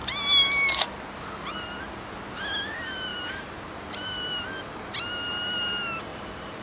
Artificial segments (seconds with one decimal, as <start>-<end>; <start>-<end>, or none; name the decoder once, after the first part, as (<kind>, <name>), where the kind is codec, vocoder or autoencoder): 3.1-3.7 (vocoder, BigVGAN v2); 6.1-6.6